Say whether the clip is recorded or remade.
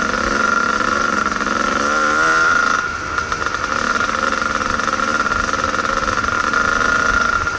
recorded